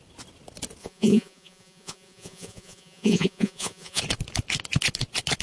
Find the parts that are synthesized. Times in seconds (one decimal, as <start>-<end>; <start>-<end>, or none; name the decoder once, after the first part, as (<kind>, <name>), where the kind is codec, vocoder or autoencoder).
0.8-4.0 (vocoder, Vocos)